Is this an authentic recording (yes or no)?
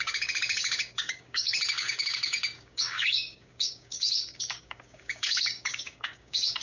no